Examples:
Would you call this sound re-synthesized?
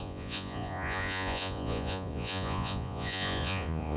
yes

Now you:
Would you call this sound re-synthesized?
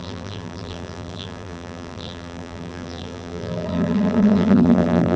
yes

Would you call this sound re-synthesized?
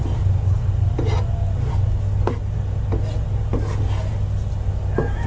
no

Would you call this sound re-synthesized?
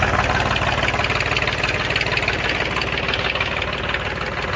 no